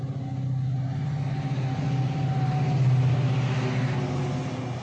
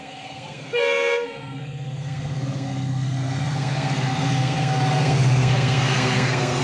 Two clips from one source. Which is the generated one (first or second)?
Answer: second